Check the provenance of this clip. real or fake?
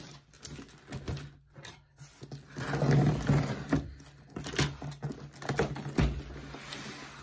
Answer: real